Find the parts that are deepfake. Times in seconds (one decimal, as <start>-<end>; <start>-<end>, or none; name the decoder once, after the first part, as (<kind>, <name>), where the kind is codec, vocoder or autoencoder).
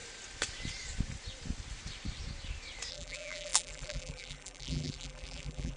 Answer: 2.9-5.8 (vocoder, BigVGAN v2)